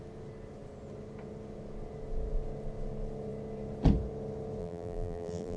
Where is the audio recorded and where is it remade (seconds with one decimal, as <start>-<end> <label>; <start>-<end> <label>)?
0.0-4.6 recorded; 4.6-5.6 remade